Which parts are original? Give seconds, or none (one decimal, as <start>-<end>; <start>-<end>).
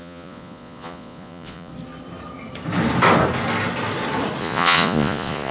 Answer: 1.7-4.4